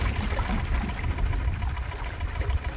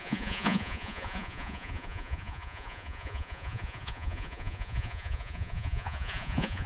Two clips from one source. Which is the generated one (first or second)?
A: second